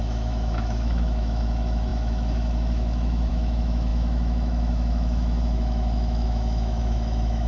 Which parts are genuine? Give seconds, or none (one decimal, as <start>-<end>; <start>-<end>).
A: none